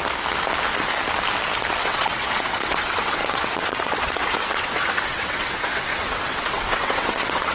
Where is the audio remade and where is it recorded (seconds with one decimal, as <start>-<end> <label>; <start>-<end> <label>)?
0.0-1.8 recorded; 1.8-7.5 remade